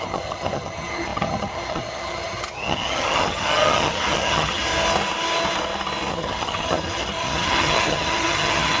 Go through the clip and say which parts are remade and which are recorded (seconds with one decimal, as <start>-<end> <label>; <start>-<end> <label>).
0.0-4.7 remade; 4.7-6.1 recorded; 6.1-8.8 remade